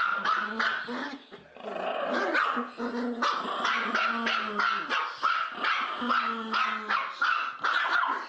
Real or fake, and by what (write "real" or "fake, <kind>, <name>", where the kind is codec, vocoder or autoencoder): real